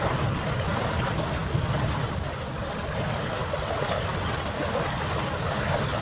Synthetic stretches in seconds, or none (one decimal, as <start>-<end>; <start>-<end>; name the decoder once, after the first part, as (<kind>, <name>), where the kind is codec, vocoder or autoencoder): none